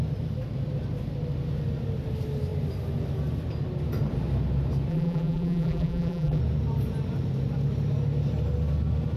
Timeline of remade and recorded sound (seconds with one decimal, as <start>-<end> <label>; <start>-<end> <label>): 0.0-4.9 recorded; 4.9-6.4 remade; 6.4-9.2 recorded